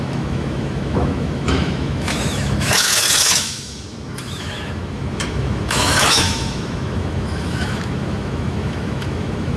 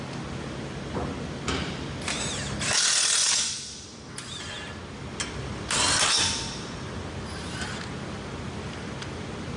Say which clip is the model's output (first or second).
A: first